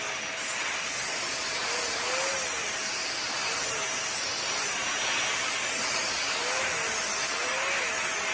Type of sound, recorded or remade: recorded